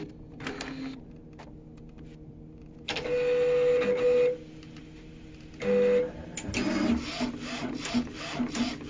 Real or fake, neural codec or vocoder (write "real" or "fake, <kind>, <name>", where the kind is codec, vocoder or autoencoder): real